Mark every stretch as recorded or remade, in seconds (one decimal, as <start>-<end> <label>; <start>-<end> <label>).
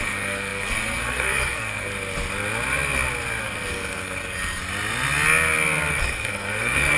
0.0-1.9 remade; 1.9-3.4 recorded; 3.4-4.6 remade; 4.6-5.9 recorded; 5.9-7.0 remade